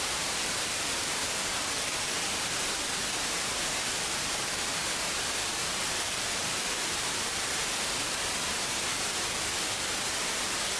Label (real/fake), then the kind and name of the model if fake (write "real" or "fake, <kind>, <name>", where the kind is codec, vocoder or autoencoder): fake, vocoder, BigVGAN v2